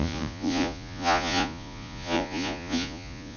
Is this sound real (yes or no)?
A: no